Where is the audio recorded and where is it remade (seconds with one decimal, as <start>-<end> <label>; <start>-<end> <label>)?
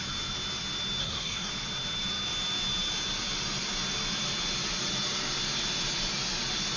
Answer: 0.0-1.0 recorded; 1.0-1.5 remade; 1.5-6.8 recorded